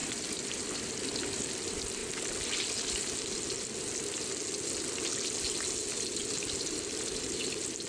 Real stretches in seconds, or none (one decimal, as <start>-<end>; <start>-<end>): 1.5-7.9